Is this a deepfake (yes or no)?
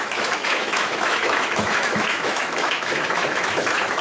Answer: yes